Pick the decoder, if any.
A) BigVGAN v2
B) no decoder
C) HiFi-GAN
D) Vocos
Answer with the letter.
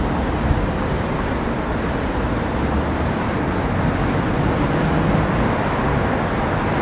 B